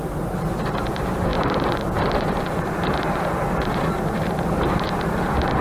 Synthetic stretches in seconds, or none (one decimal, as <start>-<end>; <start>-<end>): 0.0-5.6